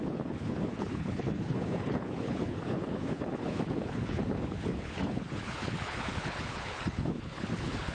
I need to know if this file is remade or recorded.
remade